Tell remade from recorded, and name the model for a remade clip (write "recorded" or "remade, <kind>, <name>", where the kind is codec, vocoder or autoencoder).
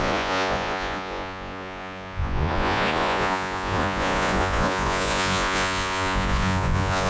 remade, vocoder, Vocos